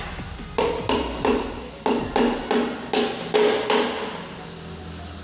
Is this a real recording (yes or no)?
yes